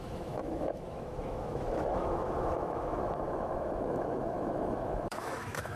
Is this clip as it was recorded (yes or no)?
no